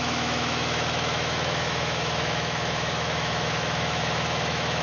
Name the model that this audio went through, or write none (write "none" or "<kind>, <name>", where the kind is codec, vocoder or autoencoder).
autoencoder, DAC-VAE